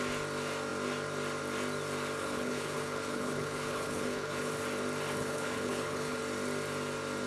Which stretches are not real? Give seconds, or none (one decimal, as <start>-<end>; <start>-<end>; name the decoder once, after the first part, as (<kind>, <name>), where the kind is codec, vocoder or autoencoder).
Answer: 2.2-4.5 (codec, HILCodec); 5.2-6.2